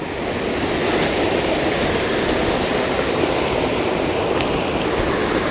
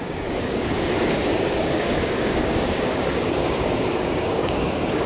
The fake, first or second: second